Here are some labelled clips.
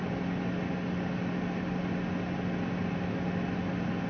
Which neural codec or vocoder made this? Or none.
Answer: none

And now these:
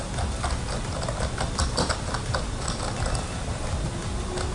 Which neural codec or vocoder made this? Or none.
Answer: none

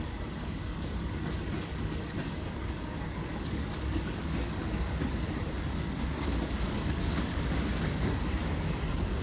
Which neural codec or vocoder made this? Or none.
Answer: codec, DAC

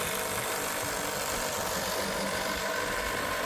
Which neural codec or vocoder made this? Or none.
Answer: none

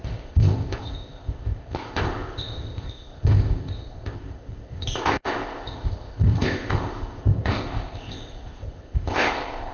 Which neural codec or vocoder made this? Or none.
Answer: codec, ZipCodec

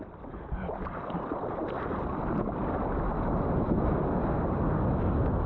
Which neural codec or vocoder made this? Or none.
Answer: none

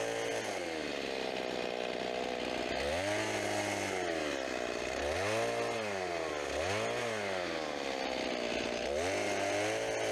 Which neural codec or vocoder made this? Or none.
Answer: none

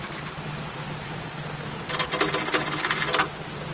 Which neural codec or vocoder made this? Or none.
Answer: none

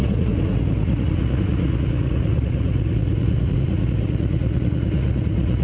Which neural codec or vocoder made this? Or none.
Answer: vocoder, Vocos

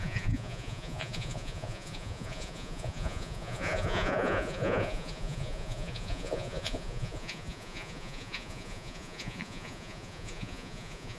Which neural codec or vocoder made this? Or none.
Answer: vocoder, Vocos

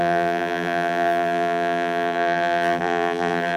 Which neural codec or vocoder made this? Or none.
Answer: vocoder, BigVGAN v2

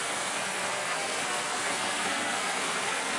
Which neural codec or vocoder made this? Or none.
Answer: codec, SNAC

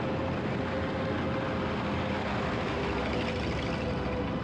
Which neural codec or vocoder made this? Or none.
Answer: none